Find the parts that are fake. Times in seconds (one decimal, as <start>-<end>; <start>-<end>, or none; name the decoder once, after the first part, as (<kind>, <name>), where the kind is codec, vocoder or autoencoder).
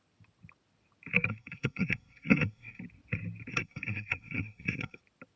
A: 1.3-2.8 (codec, SNAC); 3.5-5.0